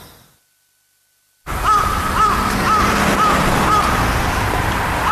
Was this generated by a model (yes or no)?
no